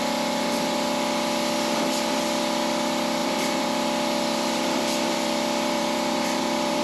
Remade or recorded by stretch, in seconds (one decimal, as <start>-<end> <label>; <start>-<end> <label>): 0.0-3.2 recorded; 3.2-6.8 remade